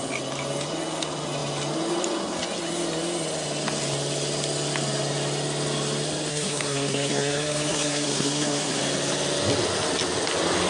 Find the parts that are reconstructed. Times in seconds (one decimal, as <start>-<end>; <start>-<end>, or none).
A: 6.3-8.8

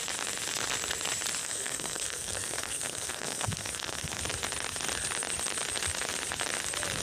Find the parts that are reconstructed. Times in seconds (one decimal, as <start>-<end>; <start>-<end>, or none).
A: 1.4-4.2

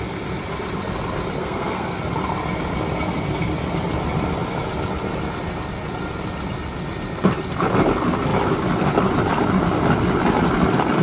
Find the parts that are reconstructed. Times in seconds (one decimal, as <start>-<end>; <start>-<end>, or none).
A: 1.4-2.0

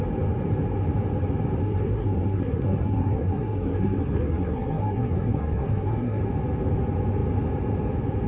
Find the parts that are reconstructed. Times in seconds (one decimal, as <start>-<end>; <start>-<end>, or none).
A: 1.6-6.2